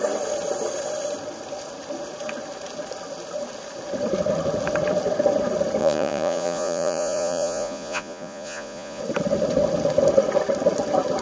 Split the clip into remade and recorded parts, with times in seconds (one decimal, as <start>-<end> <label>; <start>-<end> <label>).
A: 0.0-5.8 recorded; 5.8-9.0 remade; 9.0-11.2 recorded

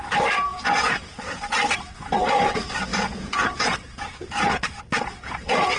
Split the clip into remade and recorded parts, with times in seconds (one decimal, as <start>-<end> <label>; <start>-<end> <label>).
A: 0.0-0.5 recorded; 0.5-1.4 remade; 1.4-2.9 recorded; 2.9-5.8 remade

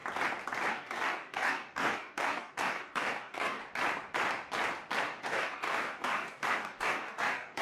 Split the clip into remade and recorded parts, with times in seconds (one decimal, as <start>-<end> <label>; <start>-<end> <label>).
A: 0.0-0.7 recorded; 0.7-3.6 remade; 3.6-5.0 recorded; 5.0-7.6 remade

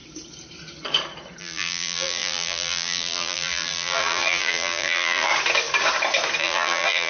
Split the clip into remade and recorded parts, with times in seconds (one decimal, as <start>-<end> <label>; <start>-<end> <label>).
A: 0.0-1.4 recorded; 1.4-5.3 remade; 5.3-6.4 recorded; 6.4-7.1 remade